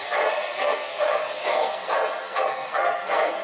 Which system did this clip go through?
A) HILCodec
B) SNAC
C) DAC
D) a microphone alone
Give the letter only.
B